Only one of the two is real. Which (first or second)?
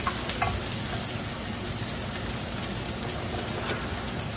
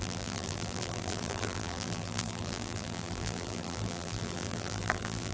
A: first